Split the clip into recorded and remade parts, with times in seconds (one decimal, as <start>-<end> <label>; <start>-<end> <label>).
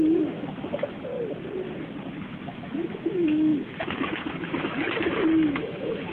0.0-1.1 remade; 1.1-2.3 recorded; 2.3-6.1 remade